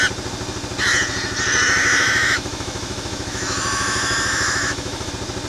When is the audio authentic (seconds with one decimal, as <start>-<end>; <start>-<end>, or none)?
0.0-1.8; 5.1-5.5